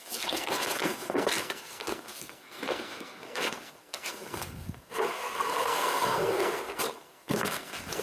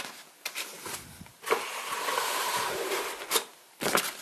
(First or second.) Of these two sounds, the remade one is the first